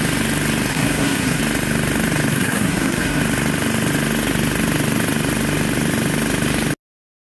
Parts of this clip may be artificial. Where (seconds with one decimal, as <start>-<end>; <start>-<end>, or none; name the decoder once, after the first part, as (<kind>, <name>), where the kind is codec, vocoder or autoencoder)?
0.7-1.4 (codec, SNAC); 2.3-3.2